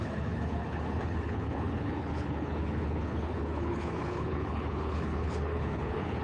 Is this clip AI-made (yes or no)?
yes